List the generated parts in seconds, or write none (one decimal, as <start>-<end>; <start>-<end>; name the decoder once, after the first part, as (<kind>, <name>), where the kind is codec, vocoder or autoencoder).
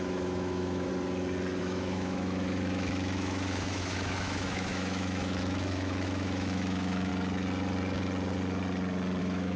0.0-0.9 (autoencoder, DAC-VAE); 1.6-7.1; 9.2-9.6